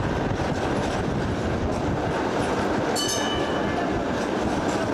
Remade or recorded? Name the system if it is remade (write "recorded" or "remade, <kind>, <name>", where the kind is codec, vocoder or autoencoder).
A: recorded